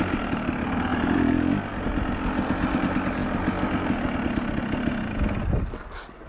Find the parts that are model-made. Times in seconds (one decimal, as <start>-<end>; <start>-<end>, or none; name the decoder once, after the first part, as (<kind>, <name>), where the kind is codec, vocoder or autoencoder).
none